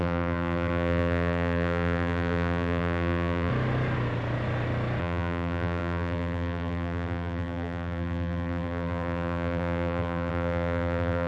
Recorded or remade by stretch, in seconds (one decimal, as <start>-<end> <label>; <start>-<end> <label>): 0.0-3.5 remade; 3.5-5.0 recorded; 5.0-11.3 remade